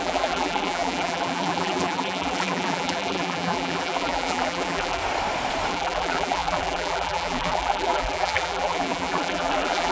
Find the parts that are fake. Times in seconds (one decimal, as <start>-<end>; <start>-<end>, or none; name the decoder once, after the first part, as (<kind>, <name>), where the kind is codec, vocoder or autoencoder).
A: 0.0-5.0 (vocoder, BigVGAN v2); 5.7-9.9